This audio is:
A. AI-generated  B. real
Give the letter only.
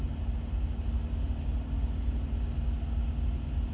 B